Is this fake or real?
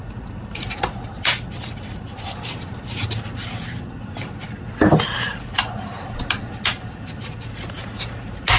real